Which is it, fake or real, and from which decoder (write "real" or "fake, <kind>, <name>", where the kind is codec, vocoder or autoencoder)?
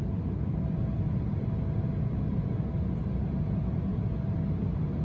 real